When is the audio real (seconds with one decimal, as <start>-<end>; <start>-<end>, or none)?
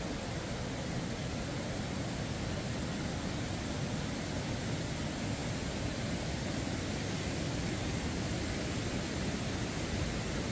0.0-10.5